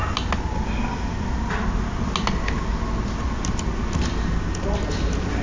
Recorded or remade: recorded